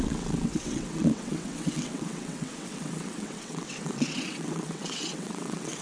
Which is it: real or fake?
fake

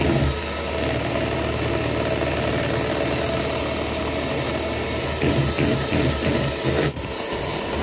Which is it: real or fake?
real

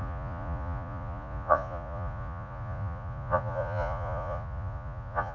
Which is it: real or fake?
fake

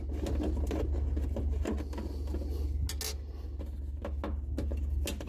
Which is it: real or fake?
real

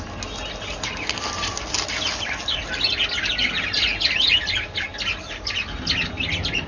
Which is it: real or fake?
real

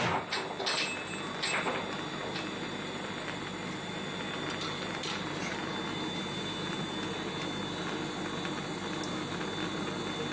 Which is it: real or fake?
real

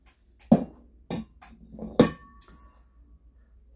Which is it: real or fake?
real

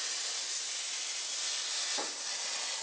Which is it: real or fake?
real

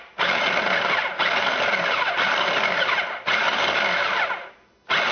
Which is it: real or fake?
real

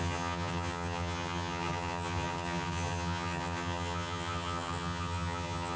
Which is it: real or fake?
fake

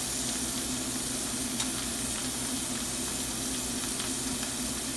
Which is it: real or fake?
real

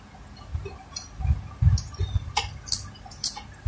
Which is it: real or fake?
real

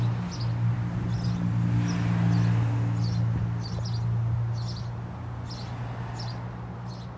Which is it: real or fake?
real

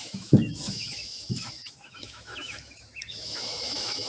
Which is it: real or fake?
fake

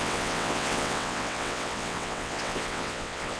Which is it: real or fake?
fake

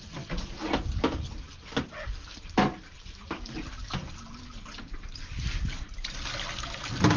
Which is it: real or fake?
real